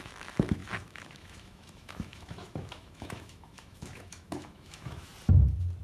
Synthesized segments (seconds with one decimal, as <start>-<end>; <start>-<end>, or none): 0.0-5.1